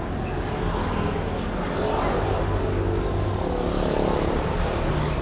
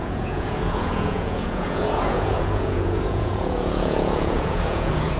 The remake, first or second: second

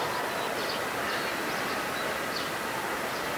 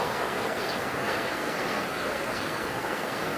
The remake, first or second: second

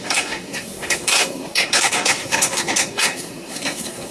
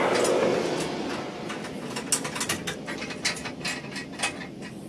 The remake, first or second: first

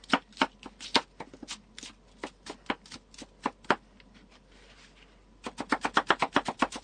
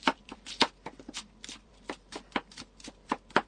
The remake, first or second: second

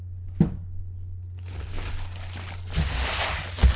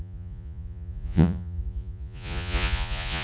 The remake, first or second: second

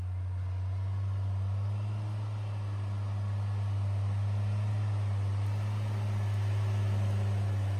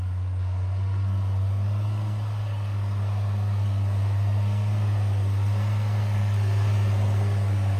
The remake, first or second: second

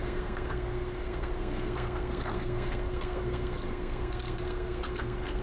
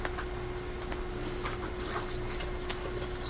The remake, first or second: first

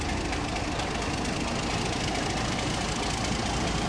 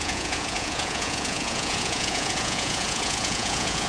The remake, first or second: second